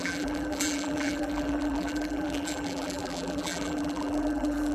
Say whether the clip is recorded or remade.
remade